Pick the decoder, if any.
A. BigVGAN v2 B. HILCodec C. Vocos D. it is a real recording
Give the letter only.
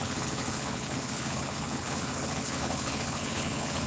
B